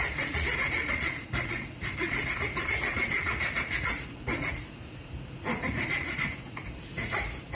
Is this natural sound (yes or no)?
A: no